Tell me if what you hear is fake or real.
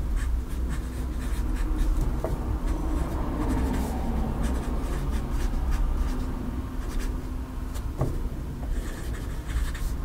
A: real